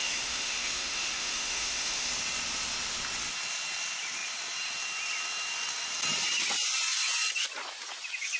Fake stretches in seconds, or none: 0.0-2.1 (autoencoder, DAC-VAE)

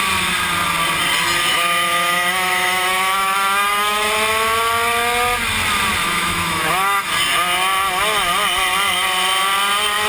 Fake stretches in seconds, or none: 1.5-4.1 (autoencoder, DAC-VAE); 6.0-7.1

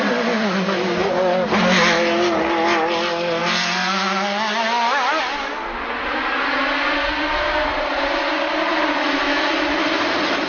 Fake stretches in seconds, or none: 9.0-9.5 (autoencoder, DAC-VAE)

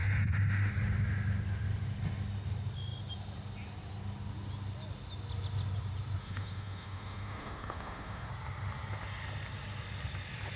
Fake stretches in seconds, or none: 0.0-0.7 (autoencoder, DAC-VAE); 6.2-8.3